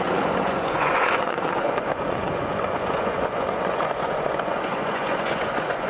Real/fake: fake